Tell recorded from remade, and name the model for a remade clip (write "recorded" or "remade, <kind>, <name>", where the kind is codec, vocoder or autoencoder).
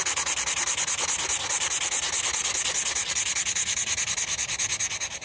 recorded